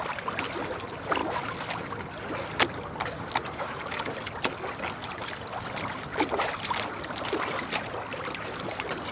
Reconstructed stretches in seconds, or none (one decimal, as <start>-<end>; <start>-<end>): none